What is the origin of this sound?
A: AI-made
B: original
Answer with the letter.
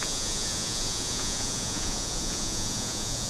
A